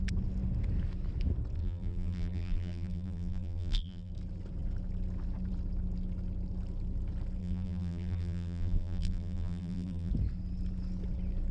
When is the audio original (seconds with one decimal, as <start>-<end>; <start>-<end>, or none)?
0.0-1.6; 4.1-7.4; 10.1-11.5